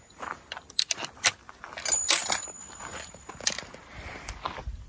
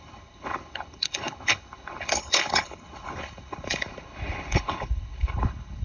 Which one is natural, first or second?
first